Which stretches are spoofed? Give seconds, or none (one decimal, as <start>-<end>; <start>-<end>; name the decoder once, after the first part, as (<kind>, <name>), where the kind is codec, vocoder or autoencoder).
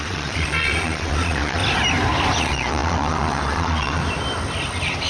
0.0-1.6 (vocoder, Vocos); 2.4-4.0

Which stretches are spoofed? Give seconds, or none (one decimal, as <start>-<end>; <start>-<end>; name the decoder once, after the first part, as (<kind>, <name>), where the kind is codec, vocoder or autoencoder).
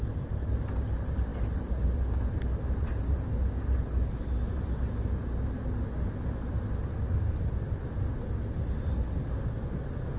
none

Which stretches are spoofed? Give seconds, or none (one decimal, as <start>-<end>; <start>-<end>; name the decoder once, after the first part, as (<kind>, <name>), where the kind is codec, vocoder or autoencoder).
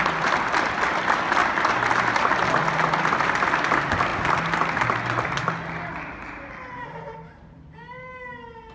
none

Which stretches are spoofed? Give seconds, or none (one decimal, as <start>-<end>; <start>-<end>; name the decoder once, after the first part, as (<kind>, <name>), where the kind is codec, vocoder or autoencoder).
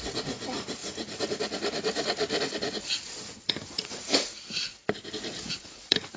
0.0-4.8 (vocoder, Vocos); 5.5-6.2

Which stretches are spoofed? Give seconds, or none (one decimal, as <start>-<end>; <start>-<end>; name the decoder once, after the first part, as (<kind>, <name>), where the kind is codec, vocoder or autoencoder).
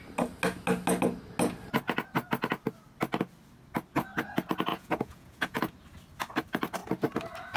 4.7-5.6 (vocoder, Vocos)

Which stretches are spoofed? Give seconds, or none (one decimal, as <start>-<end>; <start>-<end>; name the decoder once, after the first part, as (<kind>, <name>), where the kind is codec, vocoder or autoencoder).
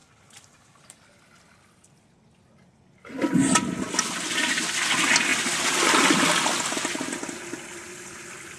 none